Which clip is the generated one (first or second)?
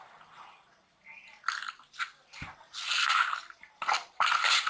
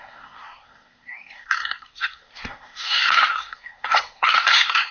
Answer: second